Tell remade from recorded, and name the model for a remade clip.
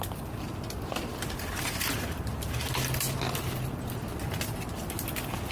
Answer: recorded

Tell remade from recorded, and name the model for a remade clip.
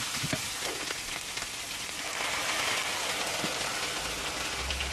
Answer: recorded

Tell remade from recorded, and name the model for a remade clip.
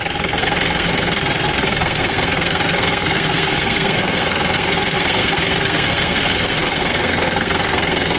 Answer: remade, codec, SNAC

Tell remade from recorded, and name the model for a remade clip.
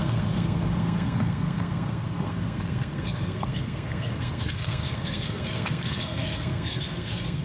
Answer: remade, codec, SNAC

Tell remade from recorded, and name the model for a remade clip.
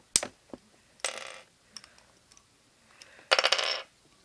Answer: recorded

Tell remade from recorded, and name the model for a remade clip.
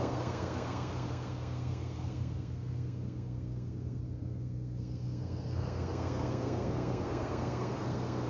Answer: remade, codec, SNAC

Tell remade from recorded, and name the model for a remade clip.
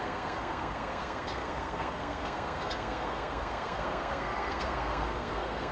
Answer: remade, codec, SNAC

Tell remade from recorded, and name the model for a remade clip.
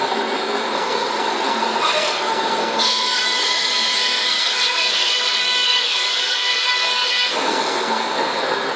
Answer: remade, codec, SNAC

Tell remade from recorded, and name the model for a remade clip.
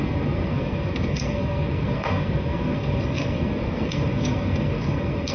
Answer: remade, codec, SNAC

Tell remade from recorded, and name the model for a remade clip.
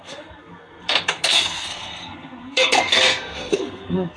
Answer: remade, codec, SNAC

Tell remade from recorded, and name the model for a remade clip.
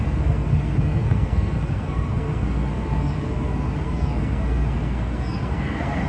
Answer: remade, codec, SNAC